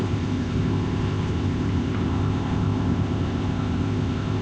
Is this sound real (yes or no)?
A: no